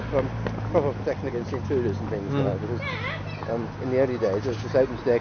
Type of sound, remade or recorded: recorded